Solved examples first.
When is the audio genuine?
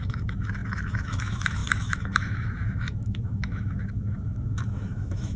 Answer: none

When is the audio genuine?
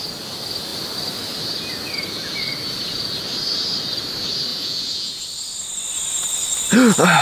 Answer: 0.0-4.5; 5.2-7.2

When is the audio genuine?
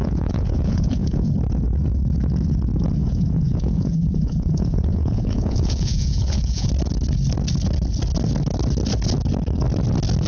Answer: 1.3-3.0; 6.7-10.3